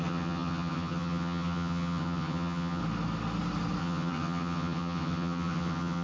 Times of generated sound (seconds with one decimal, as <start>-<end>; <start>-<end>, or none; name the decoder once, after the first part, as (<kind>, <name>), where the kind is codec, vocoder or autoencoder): 0.0-2.8 (vocoder, HiFi-GAN); 3.8-6.0